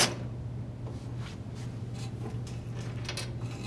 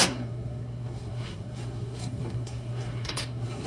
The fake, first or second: second